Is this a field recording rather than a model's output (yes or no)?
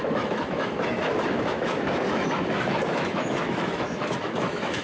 no